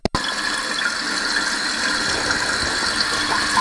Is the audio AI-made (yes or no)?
no